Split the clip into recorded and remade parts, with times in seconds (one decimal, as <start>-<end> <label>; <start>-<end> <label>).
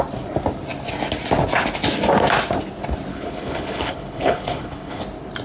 0.0-3.1 recorded; 3.1-5.0 remade; 5.0-5.4 recorded